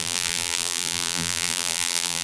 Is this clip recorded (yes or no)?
no